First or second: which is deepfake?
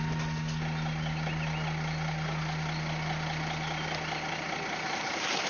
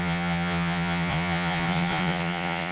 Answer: second